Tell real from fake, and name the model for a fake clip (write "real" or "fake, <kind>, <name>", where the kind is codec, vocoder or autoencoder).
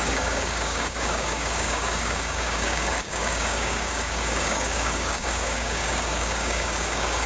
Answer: fake, codec, DAC